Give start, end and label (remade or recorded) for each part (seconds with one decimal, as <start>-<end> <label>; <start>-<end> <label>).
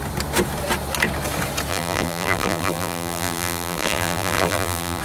0.0-1.7 recorded; 1.7-5.0 remade